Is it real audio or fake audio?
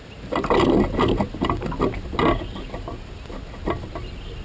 real